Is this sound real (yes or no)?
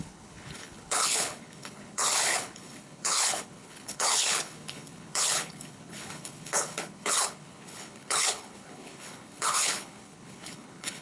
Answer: no